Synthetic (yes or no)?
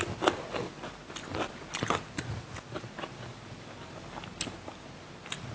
no